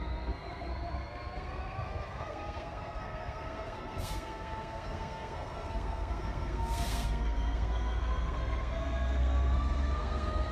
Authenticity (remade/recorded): remade